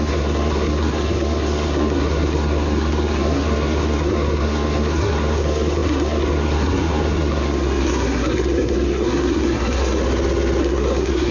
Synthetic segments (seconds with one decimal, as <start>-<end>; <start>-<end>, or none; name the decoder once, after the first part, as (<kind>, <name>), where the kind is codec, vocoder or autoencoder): 0.0-10.0 (codec, SNAC); 10.6-11.3